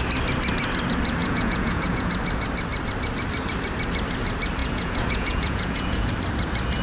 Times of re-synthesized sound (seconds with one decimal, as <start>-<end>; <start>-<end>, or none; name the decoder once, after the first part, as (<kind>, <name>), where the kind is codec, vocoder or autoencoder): 1.2-2.1 (vocoder, Vocos); 4.6-6.1